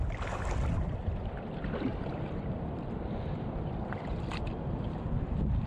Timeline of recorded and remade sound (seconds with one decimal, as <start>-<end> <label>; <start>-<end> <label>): 0.0-1.9 recorded; 1.9-5.1 remade; 5.1-5.7 recorded